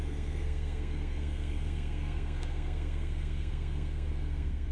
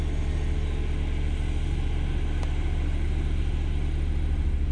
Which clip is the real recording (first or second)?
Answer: second